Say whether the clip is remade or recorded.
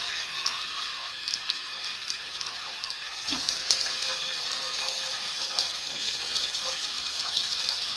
remade